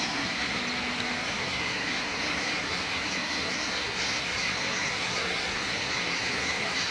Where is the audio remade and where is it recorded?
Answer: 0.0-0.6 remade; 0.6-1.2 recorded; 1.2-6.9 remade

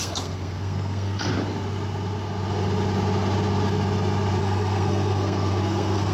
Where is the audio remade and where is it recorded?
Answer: 0.0-1.3 remade; 1.3-4.4 recorded; 4.4-6.1 remade

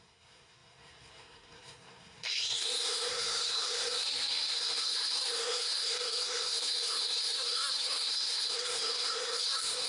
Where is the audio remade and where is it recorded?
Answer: 0.0-9.9 remade

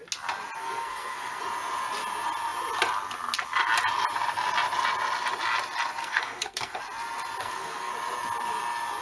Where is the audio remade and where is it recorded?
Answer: 0.0-0.6 recorded; 0.6-1.4 remade; 1.4-6.0 recorded; 6.0-6.8 remade; 6.8-7.4 recorded; 7.4-7.9 remade; 7.9-9.0 recorded

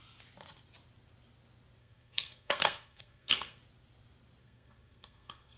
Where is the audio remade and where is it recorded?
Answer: 0.0-1.8 recorded; 1.8-3.6 remade; 3.6-4.4 recorded; 4.4-5.6 remade

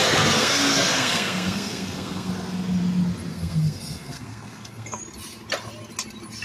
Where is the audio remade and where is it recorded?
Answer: 0.0-2.3 remade; 2.3-3.3 recorded; 3.3-5.0 remade; 5.0-6.4 recorded

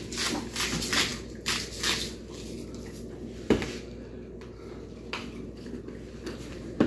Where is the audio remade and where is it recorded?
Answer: 0.0-6.9 recorded